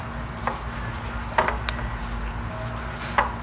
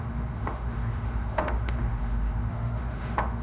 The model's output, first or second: second